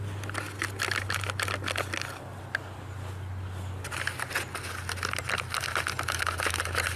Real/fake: real